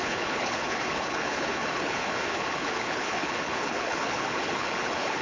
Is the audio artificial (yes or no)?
yes